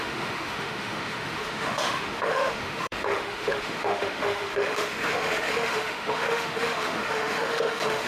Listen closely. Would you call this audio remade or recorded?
remade